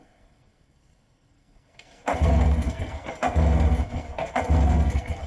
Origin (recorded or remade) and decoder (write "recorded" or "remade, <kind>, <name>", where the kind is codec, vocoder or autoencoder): remade, codec, SNAC